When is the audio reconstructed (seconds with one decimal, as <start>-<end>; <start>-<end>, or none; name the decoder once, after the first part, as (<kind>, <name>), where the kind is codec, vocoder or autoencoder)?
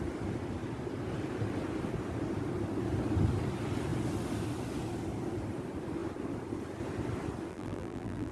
7.5-8.3 (vocoder, BigVGAN v2)